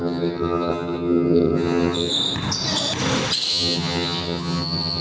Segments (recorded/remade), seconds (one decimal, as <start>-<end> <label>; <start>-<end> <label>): 0.0-2.1 remade; 2.1-3.5 recorded; 3.5-5.0 remade